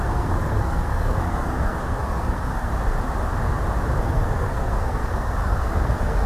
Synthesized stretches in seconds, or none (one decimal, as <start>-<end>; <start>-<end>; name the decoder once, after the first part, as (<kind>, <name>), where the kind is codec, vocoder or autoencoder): 0.0-2.7 (codec, SNAC); 4.0-6.3